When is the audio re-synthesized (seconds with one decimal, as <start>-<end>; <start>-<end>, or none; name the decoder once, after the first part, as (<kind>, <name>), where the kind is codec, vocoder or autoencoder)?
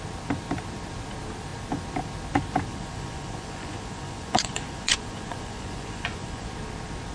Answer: 2.7-6.5 (vocoder, Vocos)